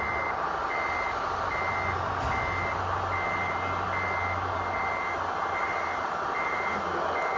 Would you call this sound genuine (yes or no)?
yes